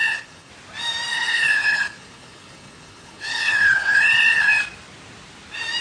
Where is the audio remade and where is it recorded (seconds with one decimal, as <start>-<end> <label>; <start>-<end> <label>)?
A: 0.0-0.5 remade; 0.5-1.1 recorded; 1.1-4.6 remade; 4.6-5.8 recorded